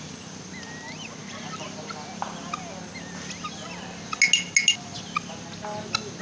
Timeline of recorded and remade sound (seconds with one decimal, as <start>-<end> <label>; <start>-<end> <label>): 0.0-6.2 recorded